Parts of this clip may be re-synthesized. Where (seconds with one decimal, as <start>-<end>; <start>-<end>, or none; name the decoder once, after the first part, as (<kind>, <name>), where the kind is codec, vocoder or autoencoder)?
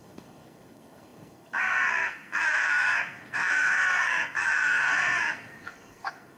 0.0-6.4 (codec, SNAC)